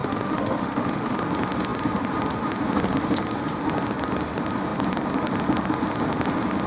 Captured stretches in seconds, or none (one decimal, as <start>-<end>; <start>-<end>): 1.2-6.7